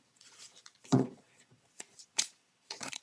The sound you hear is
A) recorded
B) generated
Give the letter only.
B